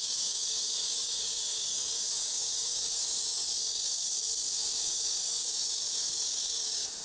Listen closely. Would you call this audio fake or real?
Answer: fake